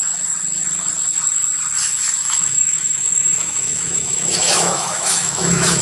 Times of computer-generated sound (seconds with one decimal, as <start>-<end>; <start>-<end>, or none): 2.2-5.8